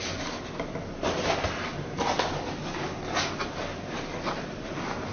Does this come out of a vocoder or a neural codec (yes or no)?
no